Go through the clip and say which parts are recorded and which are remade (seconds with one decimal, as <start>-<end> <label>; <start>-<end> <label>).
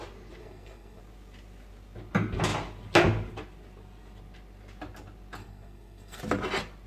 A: 0.0-0.4 recorded; 0.4-1.0 remade; 1.0-5.4 recorded; 5.4-6.2 remade; 6.2-6.9 recorded